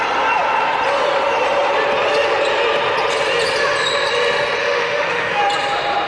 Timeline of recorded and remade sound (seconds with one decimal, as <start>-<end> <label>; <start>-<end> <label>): 0.0-4.6 recorded; 4.6-5.4 remade; 5.4-6.1 recorded